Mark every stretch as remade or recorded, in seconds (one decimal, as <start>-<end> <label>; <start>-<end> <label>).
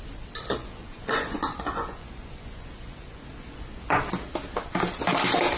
0.0-0.6 recorded; 0.6-4.0 remade; 4.0-5.6 recorded